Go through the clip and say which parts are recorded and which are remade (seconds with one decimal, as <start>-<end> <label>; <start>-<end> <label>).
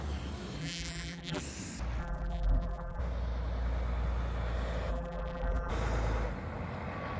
0.0-0.6 recorded; 0.6-1.4 remade; 1.4-2.0 recorded; 2.0-3.0 remade; 3.0-4.9 recorded; 4.9-5.7 remade; 5.7-7.2 recorded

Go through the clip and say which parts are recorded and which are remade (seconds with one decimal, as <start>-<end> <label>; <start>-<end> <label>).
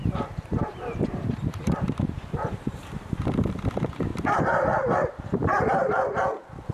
0.0-3.5 remade; 3.5-6.7 recorded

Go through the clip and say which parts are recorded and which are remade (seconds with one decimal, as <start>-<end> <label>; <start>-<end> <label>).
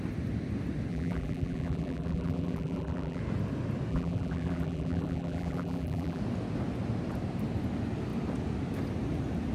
0.0-0.9 recorded; 0.9-3.2 remade; 3.2-3.9 recorded; 3.9-6.2 remade; 6.2-9.5 recorded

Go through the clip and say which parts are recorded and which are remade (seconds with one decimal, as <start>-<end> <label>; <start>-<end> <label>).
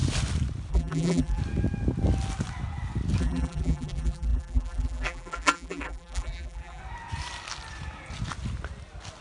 0.0-0.7 recorded; 0.7-1.4 remade; 1.4-3.2 recorded; 3.2-6.8 remade; 6.8-9.2 recorded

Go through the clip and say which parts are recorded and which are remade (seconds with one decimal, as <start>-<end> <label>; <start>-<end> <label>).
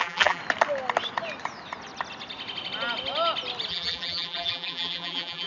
0.0-0.4 remade; 0.4-3.7 recorded; 3.7-5.5 remade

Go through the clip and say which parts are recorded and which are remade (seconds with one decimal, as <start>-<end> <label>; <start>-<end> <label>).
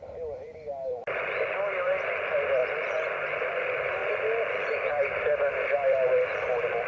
0.0-2.6 remade; 2.6-3.5 recorded; 3.5-4.0 remade; 4.0-4.7 recorded; 4.7-6.9 remade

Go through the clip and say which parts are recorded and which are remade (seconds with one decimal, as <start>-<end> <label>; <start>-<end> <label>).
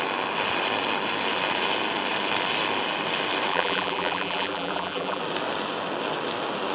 0.0-3.5 recorded; 3.5-5.2 remade; 5.2-6.7 recorded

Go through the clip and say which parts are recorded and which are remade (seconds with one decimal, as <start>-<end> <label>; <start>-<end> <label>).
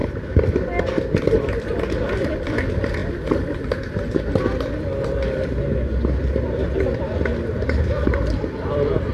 0.0-0.8 recorded; 0.8-3.0 remade; 3.0-7.8 recorded; 7.8-9.1 remade